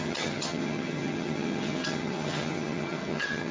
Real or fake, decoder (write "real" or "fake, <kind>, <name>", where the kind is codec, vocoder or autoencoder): fake, vocoder, HiFi-GAN